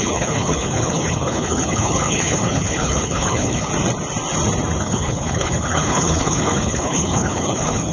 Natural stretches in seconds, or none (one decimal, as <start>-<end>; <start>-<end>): 3.7-4.8